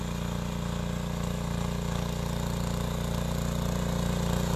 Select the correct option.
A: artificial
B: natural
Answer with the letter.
B